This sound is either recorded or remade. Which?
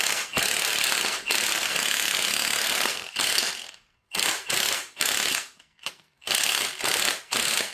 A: remade